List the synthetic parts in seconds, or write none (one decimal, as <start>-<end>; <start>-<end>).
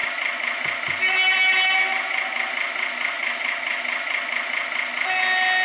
none